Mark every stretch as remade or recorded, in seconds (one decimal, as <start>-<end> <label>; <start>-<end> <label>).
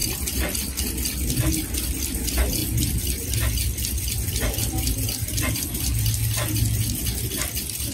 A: 0.0-7.9 recorded